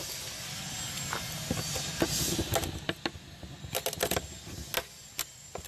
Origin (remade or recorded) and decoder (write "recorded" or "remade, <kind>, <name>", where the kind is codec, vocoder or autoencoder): recorded